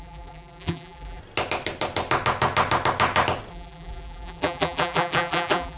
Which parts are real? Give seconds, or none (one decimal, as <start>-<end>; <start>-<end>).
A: 1.2-3.5